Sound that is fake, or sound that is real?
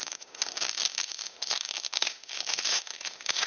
fake